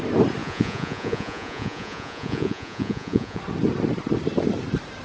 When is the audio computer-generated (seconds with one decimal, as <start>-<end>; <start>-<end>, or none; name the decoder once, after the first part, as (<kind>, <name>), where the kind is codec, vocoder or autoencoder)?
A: 0.4-3.4 (vocoder, Vocos)